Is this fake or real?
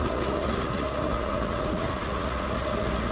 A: fake